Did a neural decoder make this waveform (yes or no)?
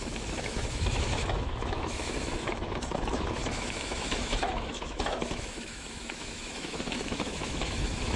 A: yes